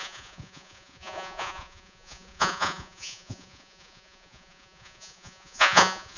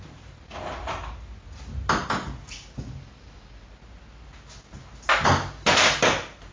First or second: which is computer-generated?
first